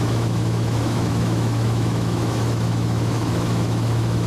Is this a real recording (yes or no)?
no